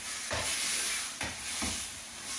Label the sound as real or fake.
real